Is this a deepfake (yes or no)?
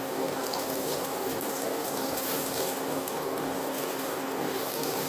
yes